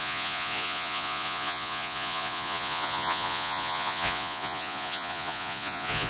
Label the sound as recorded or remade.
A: remade